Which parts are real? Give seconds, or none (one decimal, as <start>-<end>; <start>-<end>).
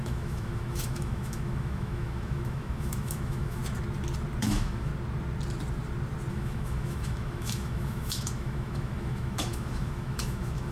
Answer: 3.6-4.4; 4.9-6.3